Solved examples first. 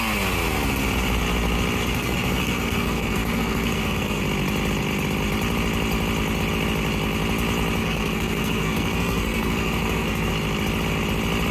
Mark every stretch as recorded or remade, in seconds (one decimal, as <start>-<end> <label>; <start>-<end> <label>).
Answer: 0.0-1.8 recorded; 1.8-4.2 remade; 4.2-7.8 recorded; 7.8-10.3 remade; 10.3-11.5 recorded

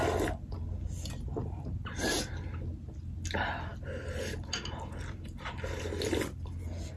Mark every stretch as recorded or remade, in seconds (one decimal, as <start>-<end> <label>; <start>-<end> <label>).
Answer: 0.0-7.0 recorded

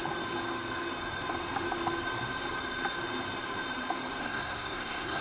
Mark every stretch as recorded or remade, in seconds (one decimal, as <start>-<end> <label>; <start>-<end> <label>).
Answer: 0.0-4.2 recorded; 4.2-5.2 remade

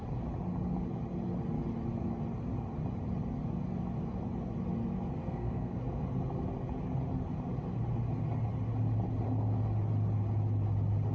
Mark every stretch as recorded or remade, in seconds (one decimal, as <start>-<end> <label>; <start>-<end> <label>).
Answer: 0.0-5.2 recorded; 5.2-5.8 remade; 5.8-11.1 recorded

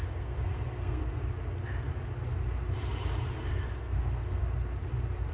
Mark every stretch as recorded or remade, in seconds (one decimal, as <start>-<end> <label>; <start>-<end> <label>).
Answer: 0.0-1.0 remade; 1.0-3.5 recorded; 3.5-4.4 remade; 4.4-5.3 recorded

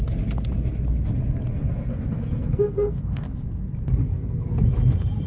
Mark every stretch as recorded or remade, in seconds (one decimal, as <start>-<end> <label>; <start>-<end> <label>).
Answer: 0.0-1.9 recorded; 1.9-3.6 remade; 3.6-4.0 recorded; 4.0-4.6 remade; 4.6-5.3 recorded